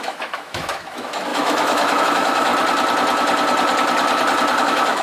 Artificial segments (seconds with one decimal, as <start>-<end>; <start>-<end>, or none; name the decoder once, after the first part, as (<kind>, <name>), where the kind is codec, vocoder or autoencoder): 0.0-2.5 (autoencoder, DAC-VAE); 4.6-5.0

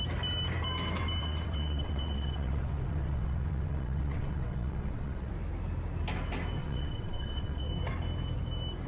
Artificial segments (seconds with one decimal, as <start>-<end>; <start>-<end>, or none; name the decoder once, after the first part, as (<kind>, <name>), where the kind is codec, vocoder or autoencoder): 1.2-5.3 (vocoder, WaveNeXt); 6.6-7.7

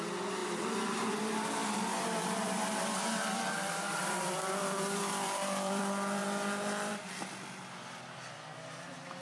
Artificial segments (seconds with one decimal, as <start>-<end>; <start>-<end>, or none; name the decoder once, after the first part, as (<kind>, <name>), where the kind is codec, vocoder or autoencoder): 0.4-1.2 (vocoder, BigVGAN v2); 1.6-5.8

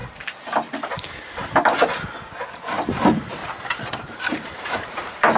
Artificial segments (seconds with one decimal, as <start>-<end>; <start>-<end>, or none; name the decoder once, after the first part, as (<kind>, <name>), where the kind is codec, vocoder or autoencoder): 3.4-5.4 (vocoder, BigVGAN v2)

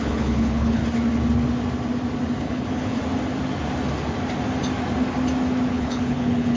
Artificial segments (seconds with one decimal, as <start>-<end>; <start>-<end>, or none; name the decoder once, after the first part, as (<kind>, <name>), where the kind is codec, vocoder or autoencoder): 0.0-0.8 (codec, HILCodec); 2.4-3.0; 5.7-6.6